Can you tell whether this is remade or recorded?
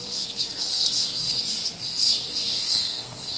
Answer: remade